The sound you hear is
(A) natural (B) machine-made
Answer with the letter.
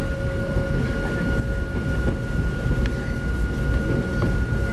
A